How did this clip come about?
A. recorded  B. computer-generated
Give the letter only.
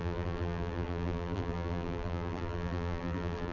B